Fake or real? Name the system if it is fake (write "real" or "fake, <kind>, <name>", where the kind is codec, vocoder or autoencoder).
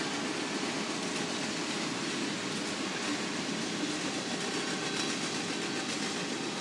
real